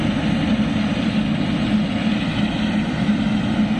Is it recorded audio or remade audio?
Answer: recorded